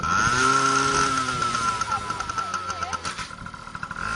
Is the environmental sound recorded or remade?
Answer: recorded